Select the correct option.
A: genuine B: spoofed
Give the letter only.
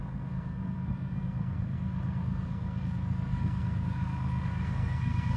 B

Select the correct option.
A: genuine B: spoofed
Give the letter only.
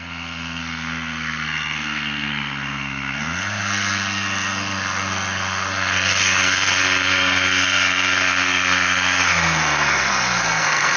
B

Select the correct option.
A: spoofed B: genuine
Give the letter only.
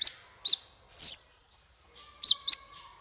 B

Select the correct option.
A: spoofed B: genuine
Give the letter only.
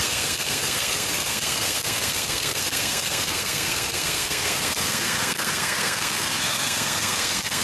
A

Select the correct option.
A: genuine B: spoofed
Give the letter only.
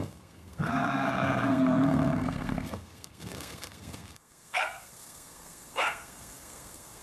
B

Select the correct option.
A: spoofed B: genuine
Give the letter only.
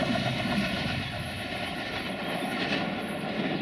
B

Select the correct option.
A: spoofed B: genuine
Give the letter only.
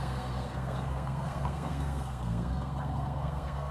A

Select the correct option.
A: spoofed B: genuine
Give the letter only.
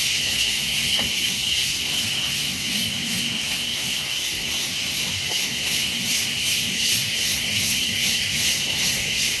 A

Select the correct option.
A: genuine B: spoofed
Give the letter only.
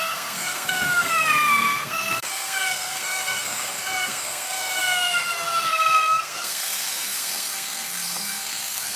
B